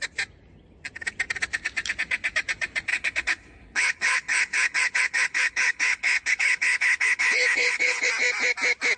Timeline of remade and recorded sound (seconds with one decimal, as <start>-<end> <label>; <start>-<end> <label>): 0.0-2.9 recorded; 2.9-8.1 remade; 8.1-9.0 recorded